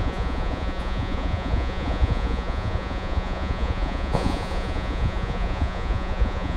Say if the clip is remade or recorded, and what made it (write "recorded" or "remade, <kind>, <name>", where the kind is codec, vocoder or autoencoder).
remade, vocoder, Vocos